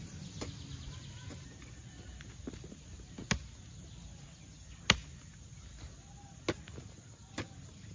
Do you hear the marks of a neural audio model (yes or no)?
no